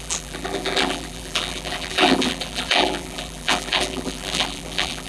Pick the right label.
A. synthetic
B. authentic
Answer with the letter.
A